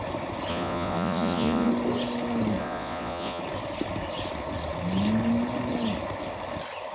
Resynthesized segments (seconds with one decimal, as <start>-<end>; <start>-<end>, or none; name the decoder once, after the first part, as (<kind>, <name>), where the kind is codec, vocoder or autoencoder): 0.5-1.7 (vocoder, Vocos); 2.6-3.4